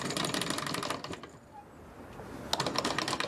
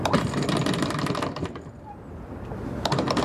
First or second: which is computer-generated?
second